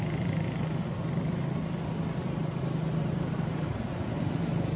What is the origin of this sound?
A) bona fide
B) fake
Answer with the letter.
A